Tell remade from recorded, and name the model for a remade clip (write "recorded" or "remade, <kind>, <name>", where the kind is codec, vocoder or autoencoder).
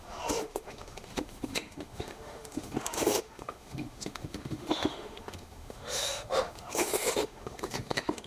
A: remade, autoencoder, DAC-VAE